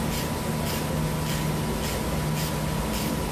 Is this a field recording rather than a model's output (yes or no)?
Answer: yes